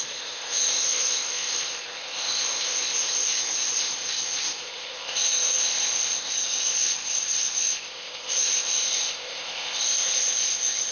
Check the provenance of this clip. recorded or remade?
remade